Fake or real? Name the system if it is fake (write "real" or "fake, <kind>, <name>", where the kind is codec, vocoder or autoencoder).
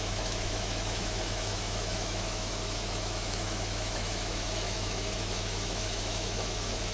fake, autoencoder, DAC-VAE